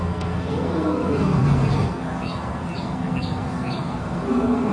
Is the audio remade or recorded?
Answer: remade